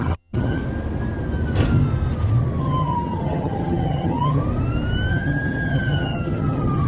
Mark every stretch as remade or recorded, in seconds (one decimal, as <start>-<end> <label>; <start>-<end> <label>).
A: 0.0-0.6 remade; 0.6-2.6 recorded; 2.6-4.4 remade; 4.4-5.1 recorded; 5.1-6.9 remade